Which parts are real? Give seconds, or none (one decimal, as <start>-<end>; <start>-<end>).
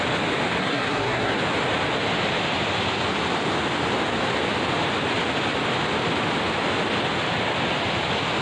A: 0.0-0.6; 1.4-8.4